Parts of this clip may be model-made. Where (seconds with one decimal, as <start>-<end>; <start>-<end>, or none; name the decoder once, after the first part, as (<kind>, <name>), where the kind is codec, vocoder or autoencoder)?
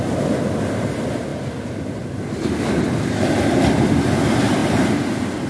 none